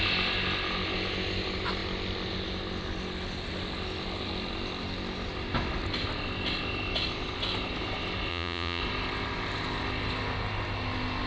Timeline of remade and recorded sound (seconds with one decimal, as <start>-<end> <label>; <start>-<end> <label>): 0.0-8.3 recorded; 8.3-8.8 remade; 8.8-11.3 recorded